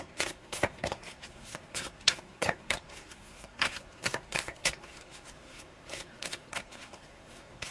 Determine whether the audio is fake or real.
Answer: fake